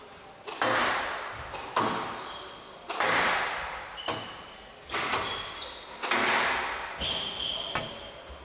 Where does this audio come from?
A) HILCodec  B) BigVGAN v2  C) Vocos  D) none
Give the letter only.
D